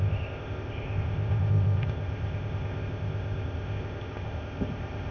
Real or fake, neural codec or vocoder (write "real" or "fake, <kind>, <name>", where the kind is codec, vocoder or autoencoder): fake, codec, ZipCodec